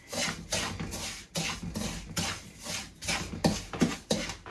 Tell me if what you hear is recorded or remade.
recorded